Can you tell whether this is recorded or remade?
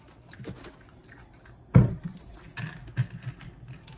recorded